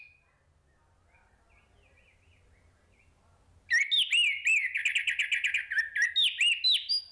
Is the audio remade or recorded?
recorded